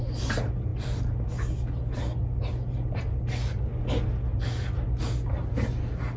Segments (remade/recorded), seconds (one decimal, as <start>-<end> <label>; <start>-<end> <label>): 0.0-6.2 recorded

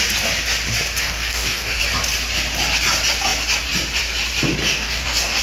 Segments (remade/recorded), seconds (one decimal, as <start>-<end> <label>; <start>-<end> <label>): 0.0-1.0 recorded; 1.0-1.8 remade; 1.8-4.6 recorded; 4.6-5.4 remade

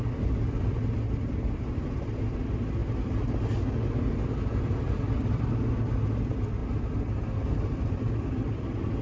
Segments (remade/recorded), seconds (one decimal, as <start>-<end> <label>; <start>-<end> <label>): 0.0-9.0 recorded

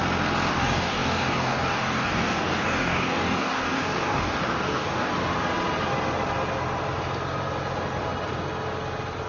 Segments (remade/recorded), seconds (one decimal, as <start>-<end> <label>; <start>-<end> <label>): 0.0-0.5 recorded; 0.5-5.1 remade; 5.1-9.3 recorded

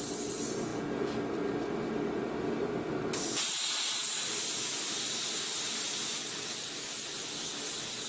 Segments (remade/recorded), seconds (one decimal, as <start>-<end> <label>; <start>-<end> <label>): 0.0-8.1 recorded

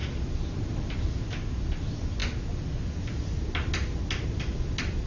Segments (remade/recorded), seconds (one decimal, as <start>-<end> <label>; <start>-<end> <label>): 0.0-5.1 recorded

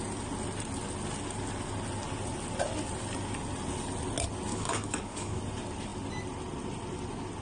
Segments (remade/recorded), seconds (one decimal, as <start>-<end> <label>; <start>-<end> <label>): 0.0-4.5 recorded; 4.5-5.4 remade; 5.4-7.4 recorded

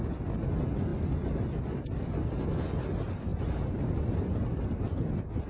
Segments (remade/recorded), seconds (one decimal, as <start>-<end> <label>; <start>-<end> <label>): 0.0-5.5 recorded